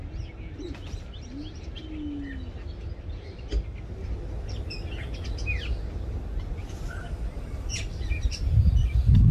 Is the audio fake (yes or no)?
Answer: no